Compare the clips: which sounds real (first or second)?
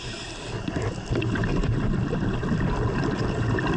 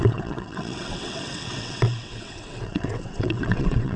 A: first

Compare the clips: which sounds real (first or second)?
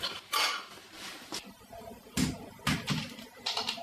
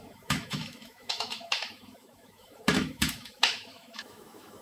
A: first